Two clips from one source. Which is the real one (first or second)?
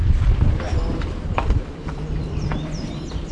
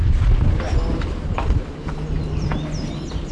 second